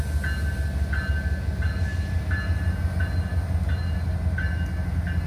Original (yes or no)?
yes